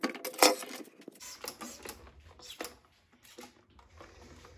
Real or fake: real